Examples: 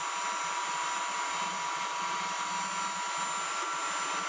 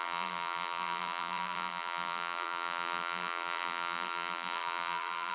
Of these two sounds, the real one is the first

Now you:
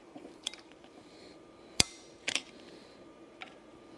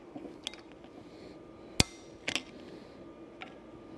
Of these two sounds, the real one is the second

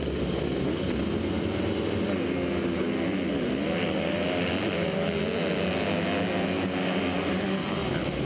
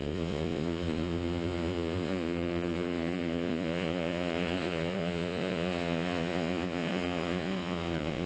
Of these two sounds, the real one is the first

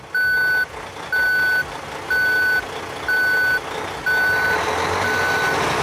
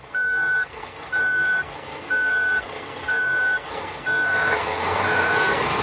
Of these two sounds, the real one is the first